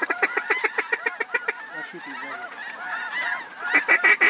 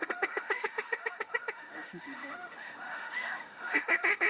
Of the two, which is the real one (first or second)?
first